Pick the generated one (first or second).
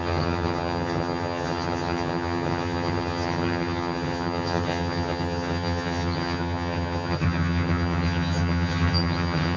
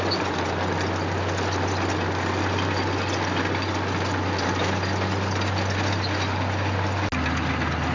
first